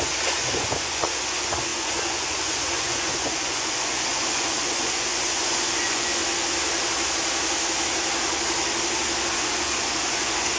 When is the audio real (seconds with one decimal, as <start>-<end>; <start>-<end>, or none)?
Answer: 6.2-9.2